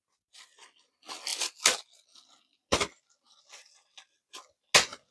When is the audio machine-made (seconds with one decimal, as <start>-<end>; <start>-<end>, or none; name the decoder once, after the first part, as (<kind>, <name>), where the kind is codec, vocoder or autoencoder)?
none